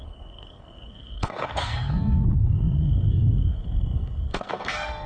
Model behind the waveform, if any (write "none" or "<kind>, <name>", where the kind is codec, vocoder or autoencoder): codec, SNAC